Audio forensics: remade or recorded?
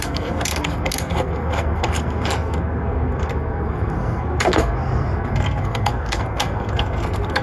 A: remade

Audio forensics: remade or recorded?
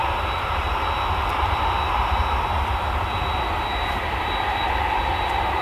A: recorded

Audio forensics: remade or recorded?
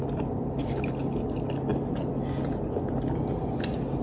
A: recorded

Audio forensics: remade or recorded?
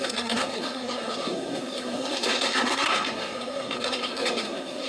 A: remade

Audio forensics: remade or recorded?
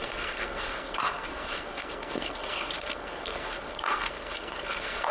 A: remade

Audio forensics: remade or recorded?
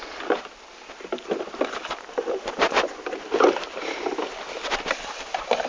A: recorded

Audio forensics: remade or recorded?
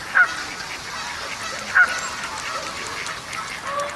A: recorded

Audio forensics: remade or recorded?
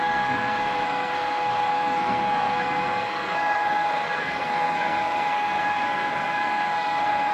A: remade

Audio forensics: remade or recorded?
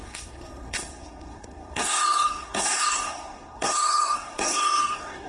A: remade